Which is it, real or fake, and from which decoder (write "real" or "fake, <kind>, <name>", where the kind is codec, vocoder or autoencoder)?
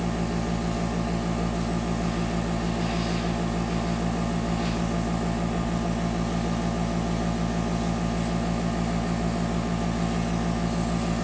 real